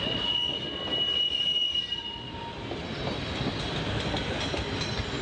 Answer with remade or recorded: recorded